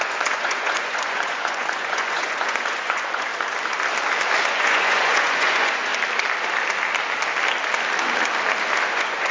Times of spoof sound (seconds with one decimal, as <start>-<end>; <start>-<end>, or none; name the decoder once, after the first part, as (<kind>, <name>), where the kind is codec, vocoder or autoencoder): 0.0-3.3 (vocoder, Vocos); 4.5-5.9; 8.9-9.3